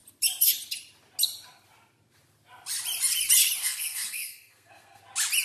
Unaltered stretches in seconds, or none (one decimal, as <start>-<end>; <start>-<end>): 0.0-3.6; 5.0-5.4